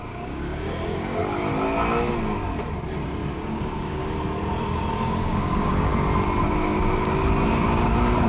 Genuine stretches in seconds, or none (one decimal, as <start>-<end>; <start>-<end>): 1.2-3.3; 4.0-4.9; 5.9-7.5